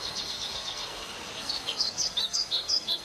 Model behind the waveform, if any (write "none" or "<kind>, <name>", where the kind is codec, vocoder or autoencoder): codec, SNAC